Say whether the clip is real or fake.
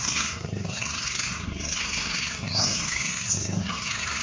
fake